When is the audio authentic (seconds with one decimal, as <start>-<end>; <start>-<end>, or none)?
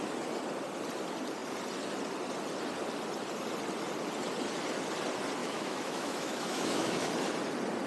0.0-5.4; 7.1-7.9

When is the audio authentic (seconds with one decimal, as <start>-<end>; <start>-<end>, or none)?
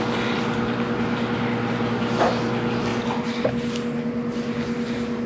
0.0-5.3